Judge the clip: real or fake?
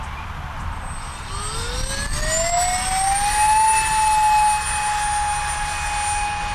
real